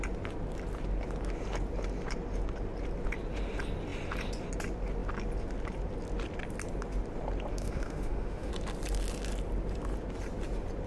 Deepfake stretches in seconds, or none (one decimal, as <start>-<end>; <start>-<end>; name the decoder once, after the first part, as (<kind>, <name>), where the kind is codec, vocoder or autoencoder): 7.5-8.5 (autoencoder, DAC-VAE)